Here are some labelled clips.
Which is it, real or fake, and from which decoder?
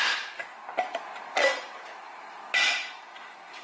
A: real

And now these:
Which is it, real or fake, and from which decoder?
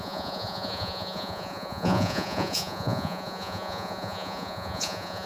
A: fake, vocoder, Vocos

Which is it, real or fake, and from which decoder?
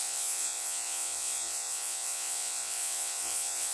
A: fake, vocoder, Vocos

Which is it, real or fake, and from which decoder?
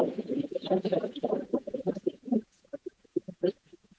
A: fake, vocoder, Vocos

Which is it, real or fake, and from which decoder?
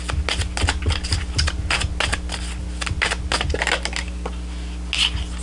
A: real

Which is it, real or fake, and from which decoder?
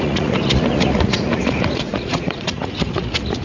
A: fake, vocoder, Vocos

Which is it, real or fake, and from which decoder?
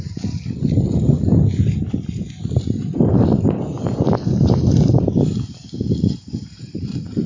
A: real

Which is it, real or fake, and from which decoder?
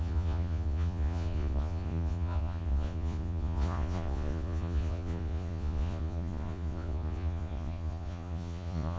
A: fake, vocoder, Vocos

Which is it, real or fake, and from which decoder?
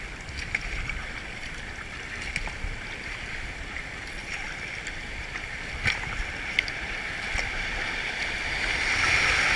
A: real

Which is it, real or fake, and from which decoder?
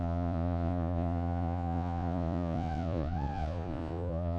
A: fake, vocoder, Vocos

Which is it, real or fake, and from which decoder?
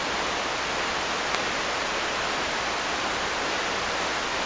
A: real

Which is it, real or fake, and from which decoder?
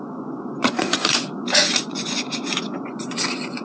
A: fake, vocoder, Vocos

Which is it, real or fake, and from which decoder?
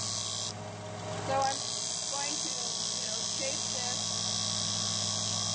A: real